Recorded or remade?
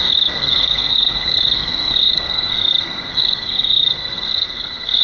remade